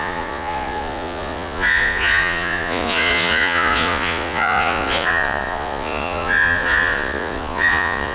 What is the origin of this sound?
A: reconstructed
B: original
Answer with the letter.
A